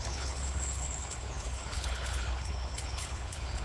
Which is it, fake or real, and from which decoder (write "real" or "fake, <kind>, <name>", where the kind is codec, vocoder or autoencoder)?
fake, codec, HILCodec